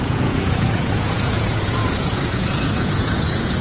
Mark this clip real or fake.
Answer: fake